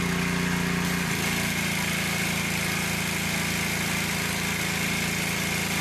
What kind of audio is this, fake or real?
real